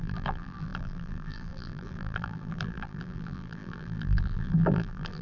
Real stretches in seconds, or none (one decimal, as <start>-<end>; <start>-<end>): none